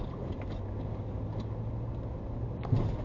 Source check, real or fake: real